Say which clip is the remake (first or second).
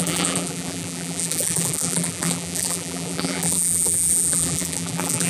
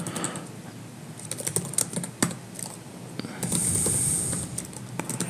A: first